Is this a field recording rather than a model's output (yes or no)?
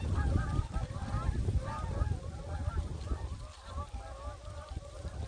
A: yes